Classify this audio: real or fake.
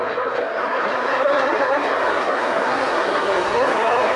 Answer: fake